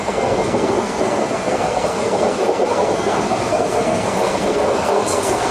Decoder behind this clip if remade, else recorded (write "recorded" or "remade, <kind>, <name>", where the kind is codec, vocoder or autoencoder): remade, codec, SNAC